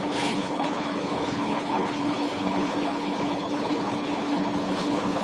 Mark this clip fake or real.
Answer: fake